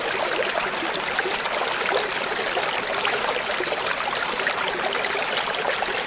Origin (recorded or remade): recorded